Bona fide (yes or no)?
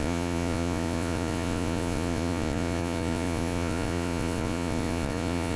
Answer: no